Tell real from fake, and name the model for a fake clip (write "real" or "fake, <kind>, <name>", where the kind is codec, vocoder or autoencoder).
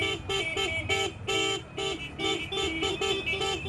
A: real